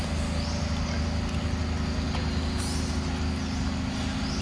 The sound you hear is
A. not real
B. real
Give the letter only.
B